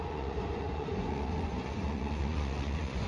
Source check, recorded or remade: remade